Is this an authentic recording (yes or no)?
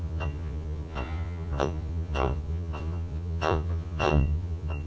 no